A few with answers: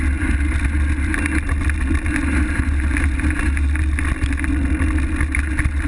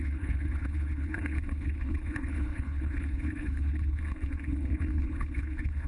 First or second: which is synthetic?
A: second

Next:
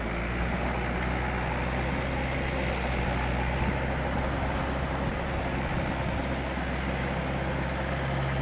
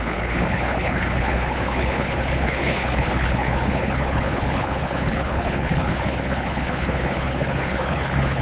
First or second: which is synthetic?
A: second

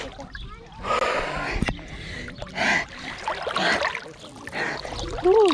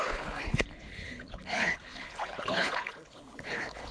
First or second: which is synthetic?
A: second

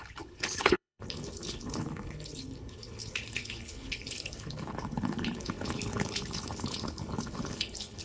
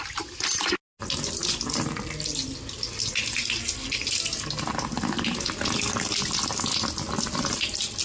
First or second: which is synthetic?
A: first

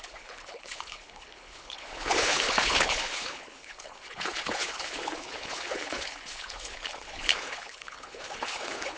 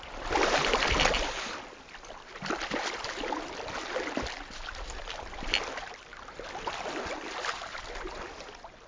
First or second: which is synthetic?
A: first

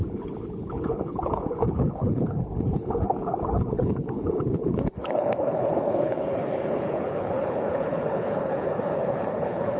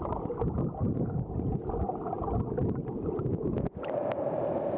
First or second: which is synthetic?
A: first